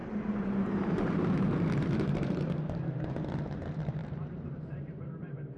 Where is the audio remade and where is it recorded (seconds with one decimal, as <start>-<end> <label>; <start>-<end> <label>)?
0.0-5.6 remade